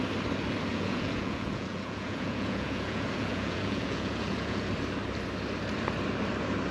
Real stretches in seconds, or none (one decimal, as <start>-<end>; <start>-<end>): 0.0-0.7; 4.7-6.7